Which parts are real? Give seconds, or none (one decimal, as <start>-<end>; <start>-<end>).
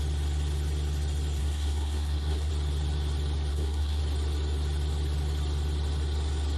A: 0.0-1.4; 2.5-3.5; 4.0-6.6